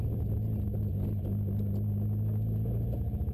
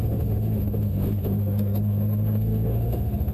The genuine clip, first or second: first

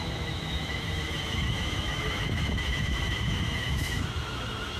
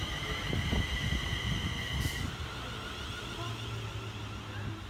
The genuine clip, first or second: second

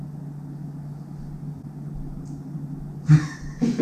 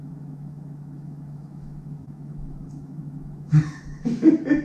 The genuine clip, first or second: first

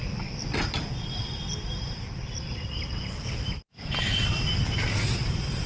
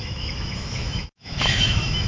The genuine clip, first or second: first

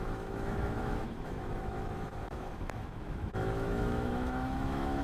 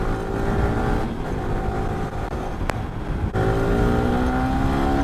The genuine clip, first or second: second